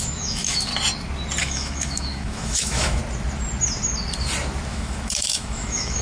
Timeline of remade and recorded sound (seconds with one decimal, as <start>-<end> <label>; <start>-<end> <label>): 0.0-0.7 remade; 0.7-1.4 recorded; 1.4-3.0 remade; 3.0-4.7 recorded; 4.7-6.0 remade